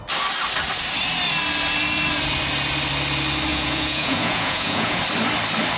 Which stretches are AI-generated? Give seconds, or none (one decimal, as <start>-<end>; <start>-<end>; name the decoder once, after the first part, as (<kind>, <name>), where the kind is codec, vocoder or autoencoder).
3.5-5.0 (vocoder, Vocos)

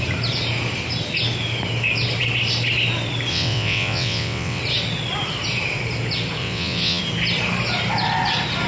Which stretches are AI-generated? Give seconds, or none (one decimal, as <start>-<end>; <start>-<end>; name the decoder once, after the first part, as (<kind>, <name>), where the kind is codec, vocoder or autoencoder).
3.3-4.6 (vocoder, WaveNeXt); 6.4-7.0

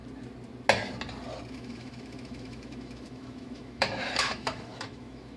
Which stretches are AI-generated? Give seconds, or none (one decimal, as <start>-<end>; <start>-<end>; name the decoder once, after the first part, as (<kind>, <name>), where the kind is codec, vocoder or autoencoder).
1.5-5.4 (autoencoder, DAC-VAE)